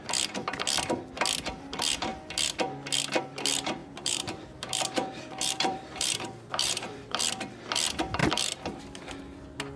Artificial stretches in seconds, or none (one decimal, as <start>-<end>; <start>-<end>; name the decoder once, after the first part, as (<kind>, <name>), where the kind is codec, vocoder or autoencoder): 3.8-7.2 (vocoder, BigVGAN v2)